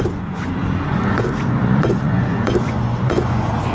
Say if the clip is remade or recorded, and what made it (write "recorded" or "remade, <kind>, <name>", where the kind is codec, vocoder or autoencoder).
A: remade, vocoder, Vocos